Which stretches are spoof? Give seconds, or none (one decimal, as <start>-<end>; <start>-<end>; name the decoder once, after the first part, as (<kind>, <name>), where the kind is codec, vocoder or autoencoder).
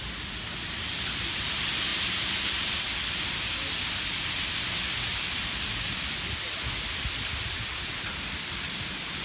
none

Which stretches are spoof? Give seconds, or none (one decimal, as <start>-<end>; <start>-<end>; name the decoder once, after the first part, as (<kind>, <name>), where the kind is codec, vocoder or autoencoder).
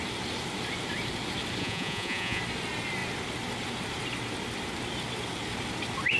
1.6-2.4 (vocoder, Vocos)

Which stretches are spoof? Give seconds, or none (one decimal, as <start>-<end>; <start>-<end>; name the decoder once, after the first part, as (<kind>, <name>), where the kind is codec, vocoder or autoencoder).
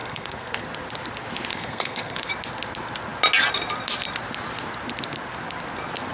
0.0-0.6 (codec, SNAC); 1.5-2.3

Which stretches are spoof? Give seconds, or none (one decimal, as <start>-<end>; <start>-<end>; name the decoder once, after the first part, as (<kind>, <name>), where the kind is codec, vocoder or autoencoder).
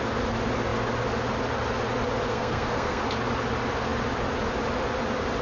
2.3-3.0 (codec, SNAC)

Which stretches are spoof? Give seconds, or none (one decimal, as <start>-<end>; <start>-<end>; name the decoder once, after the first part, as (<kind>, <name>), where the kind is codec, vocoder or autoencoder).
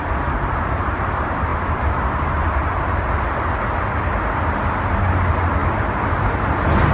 none